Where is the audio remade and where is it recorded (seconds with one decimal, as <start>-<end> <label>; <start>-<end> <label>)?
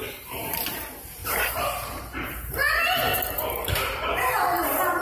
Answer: 0.0-5.0 remade